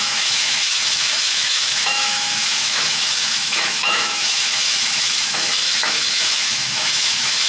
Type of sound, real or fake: fake